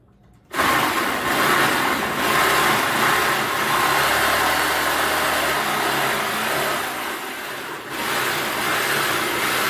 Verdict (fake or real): real